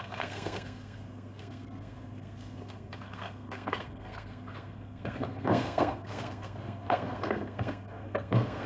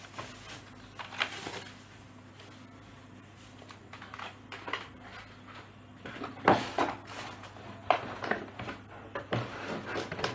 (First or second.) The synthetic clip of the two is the first